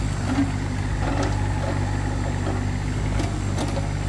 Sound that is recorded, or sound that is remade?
recorded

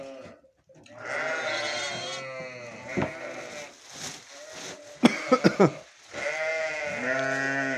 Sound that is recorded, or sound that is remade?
recorded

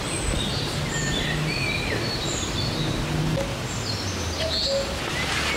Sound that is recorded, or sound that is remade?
recorded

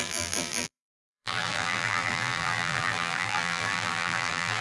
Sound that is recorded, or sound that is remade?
remade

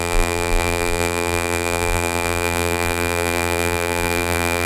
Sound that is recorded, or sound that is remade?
remade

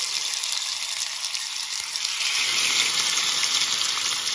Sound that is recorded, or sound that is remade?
recorded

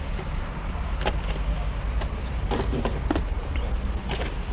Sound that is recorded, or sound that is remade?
recorded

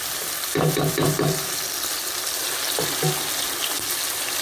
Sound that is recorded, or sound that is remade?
recorded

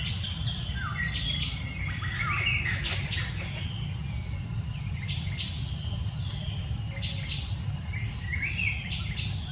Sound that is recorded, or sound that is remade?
recorded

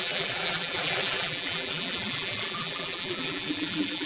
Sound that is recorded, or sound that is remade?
remade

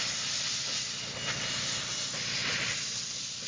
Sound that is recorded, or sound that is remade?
recorded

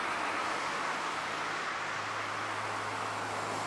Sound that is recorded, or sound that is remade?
recorded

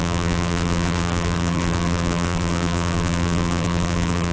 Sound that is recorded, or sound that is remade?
remade